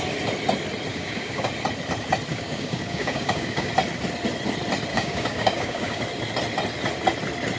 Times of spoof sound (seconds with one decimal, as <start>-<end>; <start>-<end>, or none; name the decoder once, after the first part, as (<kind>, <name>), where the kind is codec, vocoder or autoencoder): 0.9-1.5 (codec, DAC); 2.3-3.7; 4.9-6.0